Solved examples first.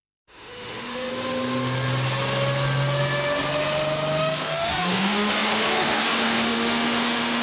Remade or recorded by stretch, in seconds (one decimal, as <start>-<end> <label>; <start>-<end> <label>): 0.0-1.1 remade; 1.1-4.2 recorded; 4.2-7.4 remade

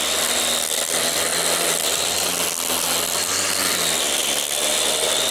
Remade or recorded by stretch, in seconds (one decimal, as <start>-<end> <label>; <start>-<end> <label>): 0.0-5.3 recorded

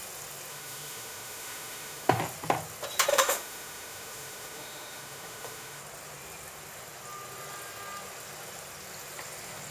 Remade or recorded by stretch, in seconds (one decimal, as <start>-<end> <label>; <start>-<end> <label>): 0.0-0.5 recorded; 0.5-2.2 remade; 2.2-3.1 recorded; 3.1-5.8 remade; 5.8-9.7 recorded

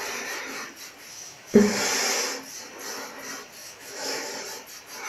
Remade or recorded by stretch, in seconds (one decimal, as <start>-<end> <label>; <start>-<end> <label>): 0.0-1.1 recorded; 1.1-1.7 remade; 1.7-3.6 recorded; 3.6-4.3 remade; 4.3-5.1 recorded

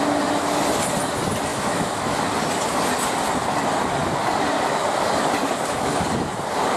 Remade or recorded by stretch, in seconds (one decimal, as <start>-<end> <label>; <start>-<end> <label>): 0.0-1.5 recorded; 1.5-2.2 remade; 2.2-6.8 recorded

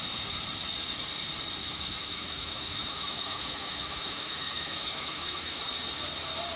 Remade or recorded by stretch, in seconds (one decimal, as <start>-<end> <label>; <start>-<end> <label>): 0.0-1.6 recorded; 1.6-5.6 remade; 5.6-6.6 recorded